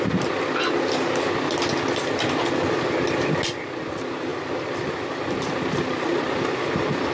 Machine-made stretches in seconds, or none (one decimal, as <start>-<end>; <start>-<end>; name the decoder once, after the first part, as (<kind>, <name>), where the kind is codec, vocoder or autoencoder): none

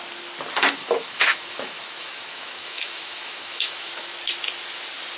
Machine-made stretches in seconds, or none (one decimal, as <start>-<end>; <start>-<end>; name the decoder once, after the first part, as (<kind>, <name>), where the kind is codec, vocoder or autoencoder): 0.8-3.9 (autoencoder, DAC-VAE)

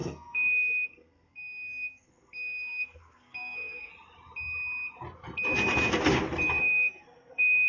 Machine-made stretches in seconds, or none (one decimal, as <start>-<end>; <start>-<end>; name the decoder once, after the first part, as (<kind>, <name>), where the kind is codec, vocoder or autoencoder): 0.0-3.9 (codec, SNAC); 6.6-7.7

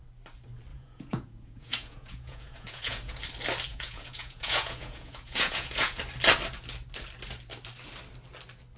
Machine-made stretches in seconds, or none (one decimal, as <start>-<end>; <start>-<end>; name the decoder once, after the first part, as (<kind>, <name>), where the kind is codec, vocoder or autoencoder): 0.7-3.2 (vocoder, Vocos); 3.7-6.0

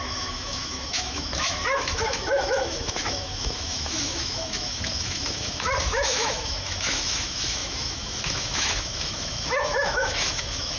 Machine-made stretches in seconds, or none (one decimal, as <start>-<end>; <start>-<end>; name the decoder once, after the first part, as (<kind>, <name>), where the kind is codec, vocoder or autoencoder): 0.0-10.8 (autoencoder, DAC-VAE)

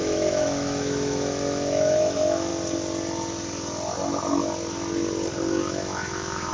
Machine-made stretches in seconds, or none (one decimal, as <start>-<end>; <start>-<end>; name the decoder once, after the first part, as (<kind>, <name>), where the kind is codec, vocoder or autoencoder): 0.0-2.5 (autoencoder, DAC-VAE); 5.7-6.5